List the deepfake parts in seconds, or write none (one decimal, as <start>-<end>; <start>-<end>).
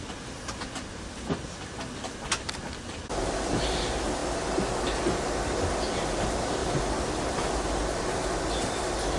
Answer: none